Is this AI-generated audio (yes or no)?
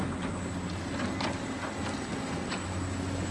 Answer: no